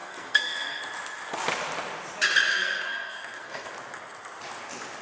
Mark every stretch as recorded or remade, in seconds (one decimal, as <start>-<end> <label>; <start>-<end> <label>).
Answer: 0.0-0.8 remade; 0.8-2.5 recorded; 2.5-3.7 remade; 3.7-5.0 recorded